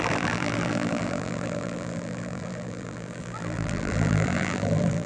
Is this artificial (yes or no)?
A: yes